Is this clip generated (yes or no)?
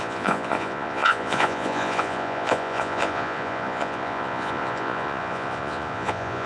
yes